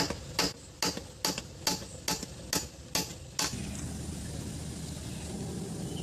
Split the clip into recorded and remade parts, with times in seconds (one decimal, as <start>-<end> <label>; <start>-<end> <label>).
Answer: 0.0-6.0 recorded